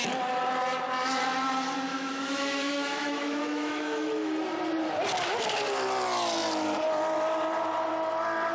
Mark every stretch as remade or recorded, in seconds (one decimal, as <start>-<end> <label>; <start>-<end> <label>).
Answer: 0.0-1.9 recorded; 1.9-4.4 remade; 4.4-8.5 recorded